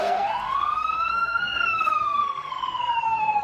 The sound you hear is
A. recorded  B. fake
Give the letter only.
B